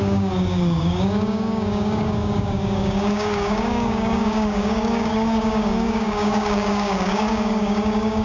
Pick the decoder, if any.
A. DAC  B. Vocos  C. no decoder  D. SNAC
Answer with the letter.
A